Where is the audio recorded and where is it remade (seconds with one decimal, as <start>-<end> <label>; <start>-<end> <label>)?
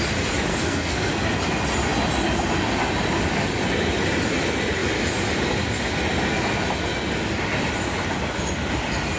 0.0-0.5 recorded; 0.5-1.1 remade; 1.1-9.2 recorded